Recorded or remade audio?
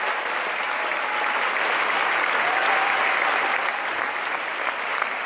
recorded